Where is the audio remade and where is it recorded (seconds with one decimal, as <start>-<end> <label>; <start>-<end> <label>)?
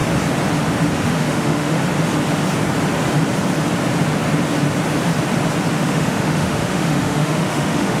0.0-1.0 recorded; 1.0-1.8 remade; 1.8-5.7 recorded; 5.7-8.0 remade